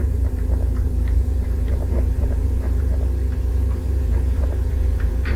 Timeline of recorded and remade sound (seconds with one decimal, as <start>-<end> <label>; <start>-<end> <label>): 0.0-2.9 remade; 2.9-3.5 recorded; 3.5-5.4 remade